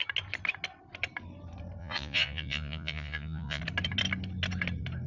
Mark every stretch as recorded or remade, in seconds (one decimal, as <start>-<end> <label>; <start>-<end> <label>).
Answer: 0.0-1.8 recorded; 1.8-3.6 remade; 3.6-5.1 recorded